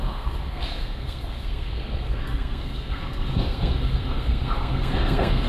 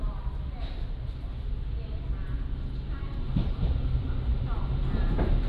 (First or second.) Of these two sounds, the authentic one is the second